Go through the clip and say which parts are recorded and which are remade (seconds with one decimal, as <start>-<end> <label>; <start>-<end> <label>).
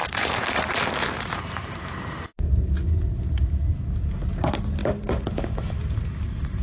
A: 0.0-1.9 remade; 1.9-6.6 recorded